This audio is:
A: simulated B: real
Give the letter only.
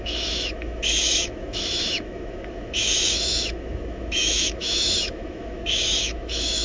A